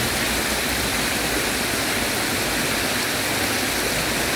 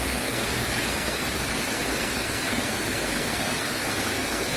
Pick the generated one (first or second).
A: second